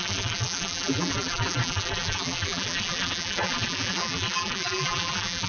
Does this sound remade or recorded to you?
remade